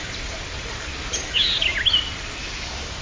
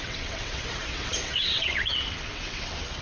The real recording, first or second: first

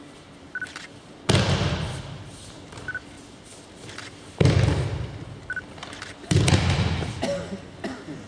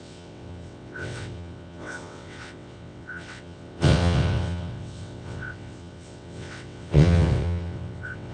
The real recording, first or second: first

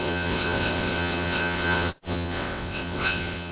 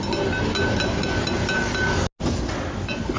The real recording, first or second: second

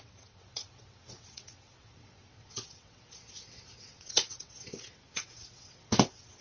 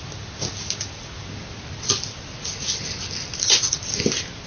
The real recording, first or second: second